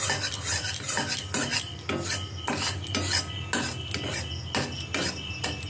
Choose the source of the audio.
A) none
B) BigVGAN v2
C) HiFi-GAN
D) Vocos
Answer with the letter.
A